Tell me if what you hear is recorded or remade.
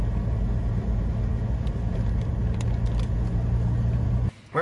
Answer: recorded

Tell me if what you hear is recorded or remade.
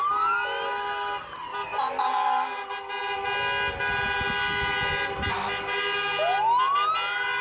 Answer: recorded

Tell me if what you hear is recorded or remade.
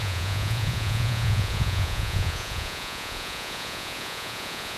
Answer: remade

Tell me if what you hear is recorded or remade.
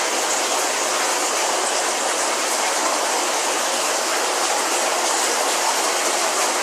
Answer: recorded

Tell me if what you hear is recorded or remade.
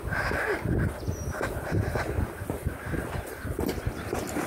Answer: recorded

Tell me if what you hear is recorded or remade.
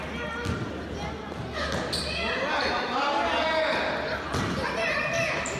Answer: recorded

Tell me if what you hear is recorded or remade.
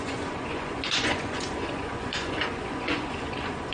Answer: remade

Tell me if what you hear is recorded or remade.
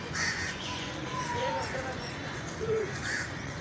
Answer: remade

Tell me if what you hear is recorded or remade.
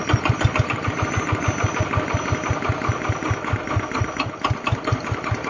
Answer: recorded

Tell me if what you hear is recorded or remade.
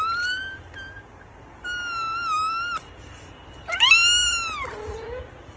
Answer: recorded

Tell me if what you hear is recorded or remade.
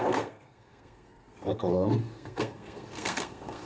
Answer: remade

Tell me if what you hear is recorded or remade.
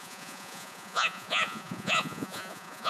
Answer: remade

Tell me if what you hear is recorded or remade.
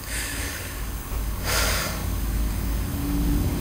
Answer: remade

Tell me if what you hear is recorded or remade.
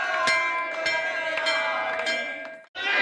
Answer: recorded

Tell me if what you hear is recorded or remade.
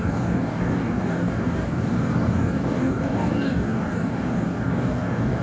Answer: remade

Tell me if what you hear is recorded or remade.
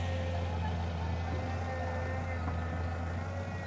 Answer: recorded